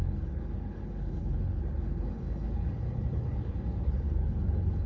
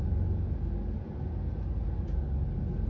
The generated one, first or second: first